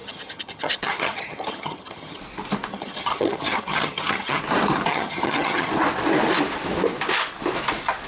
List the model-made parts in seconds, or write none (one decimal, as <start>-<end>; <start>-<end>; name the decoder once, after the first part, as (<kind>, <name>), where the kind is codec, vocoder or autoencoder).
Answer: 0.0-2.2 (vocoder, HiFi-GAN); 2.7-4.4; 4.9-5.7